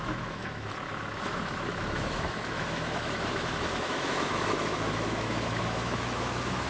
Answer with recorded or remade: remade